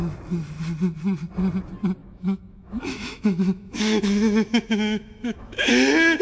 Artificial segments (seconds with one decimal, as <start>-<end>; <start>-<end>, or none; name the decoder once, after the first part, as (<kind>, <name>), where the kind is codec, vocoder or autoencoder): 2.0-5.7 (autoencoder, DAC-VAE)